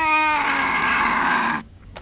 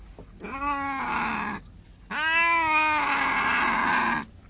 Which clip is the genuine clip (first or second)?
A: second